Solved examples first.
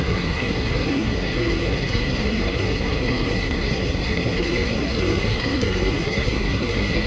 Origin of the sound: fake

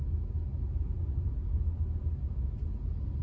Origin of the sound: real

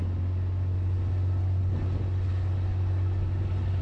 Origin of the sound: real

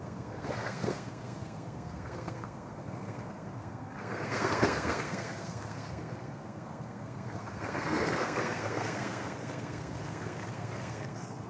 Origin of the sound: fake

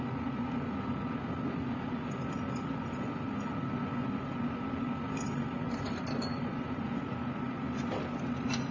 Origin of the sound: real